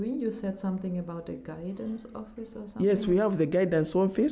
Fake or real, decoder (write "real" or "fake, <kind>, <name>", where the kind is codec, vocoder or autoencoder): real